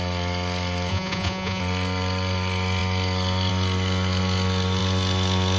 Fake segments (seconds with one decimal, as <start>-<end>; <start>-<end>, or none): 0.9-1.6